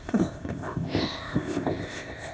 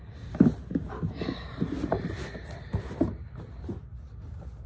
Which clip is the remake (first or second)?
first